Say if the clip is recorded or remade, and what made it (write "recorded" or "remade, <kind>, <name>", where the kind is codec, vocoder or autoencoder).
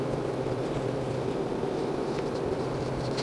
recorded